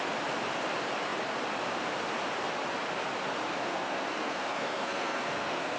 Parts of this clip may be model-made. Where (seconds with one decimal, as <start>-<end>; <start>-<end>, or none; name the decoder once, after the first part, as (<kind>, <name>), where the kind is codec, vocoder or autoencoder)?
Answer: 3.7-5.8 (codec, SNAC)